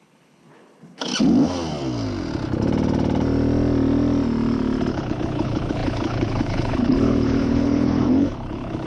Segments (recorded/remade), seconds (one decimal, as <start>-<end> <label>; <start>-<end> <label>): 0.0-1.1 remade; 1.1-4.9 recorded; 4.9-8.9 remade

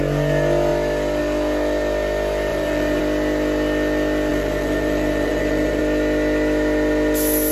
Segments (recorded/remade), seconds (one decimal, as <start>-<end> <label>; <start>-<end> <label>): 0.0-2.5 recorded; 2.5-3.0 remade; 3.0-4.3 recorded; 4.3-5.8 remade; 5.8-7.5 recorded